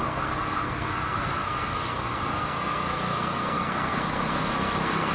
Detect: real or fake fake